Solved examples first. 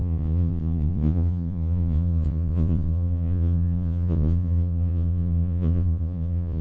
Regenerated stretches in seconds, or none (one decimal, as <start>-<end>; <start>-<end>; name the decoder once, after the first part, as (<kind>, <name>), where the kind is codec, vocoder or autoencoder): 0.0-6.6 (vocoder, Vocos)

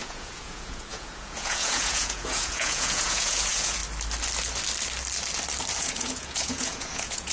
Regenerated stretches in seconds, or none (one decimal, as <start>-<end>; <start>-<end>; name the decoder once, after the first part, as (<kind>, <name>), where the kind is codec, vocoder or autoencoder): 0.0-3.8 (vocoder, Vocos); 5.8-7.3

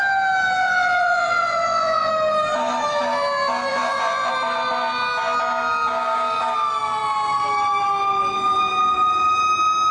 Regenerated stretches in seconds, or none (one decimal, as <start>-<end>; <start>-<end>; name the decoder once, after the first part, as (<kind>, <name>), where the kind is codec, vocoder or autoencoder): 0.6-2.1 (vocoder, Vocos); 3.7-4.3

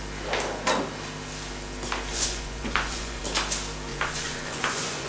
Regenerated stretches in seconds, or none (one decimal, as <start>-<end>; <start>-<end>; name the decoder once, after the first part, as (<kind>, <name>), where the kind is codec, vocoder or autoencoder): 2.1-3.2 (vocoder, Vocos); 3.9-5.1

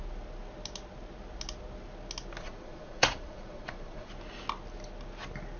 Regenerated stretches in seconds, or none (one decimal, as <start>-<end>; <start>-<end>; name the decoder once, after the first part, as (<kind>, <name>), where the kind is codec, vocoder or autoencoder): 2.4-4.1 (vocoder, Vocos)

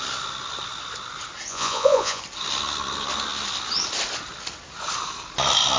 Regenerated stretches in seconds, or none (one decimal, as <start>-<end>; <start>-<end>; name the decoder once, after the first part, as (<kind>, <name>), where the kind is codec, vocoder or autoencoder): 1.5-2.2 (vocoder, Vocos)

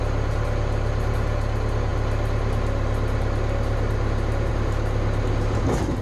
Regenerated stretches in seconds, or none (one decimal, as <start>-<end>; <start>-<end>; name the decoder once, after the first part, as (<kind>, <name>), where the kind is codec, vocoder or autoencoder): none

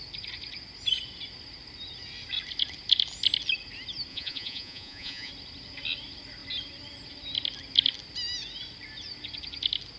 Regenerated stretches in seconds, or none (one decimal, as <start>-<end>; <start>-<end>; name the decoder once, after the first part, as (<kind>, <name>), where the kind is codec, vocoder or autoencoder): 4.1-5.3 (vocoder, Vocos)